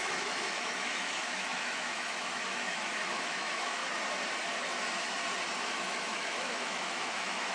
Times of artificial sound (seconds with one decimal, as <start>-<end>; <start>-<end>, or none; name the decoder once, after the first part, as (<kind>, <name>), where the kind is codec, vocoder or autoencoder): 0.0-3.8 (autoencoder, DAC-VAE); 5.6-7.5